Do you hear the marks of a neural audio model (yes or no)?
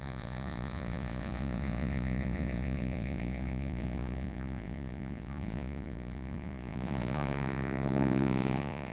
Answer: yes